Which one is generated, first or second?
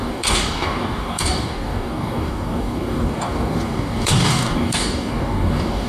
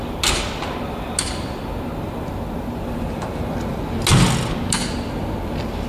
first